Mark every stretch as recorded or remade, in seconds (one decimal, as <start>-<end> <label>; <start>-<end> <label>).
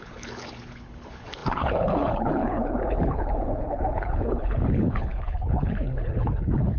0.0-6.8 remade